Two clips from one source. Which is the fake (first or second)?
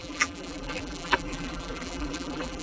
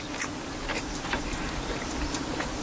first